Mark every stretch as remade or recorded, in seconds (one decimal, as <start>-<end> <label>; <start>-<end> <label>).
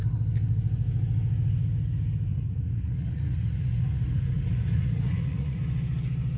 0.0-2.3 recorded; 2.3-5.6 remade; 5.6-6.4 recorded